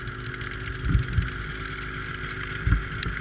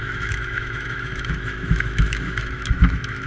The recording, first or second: first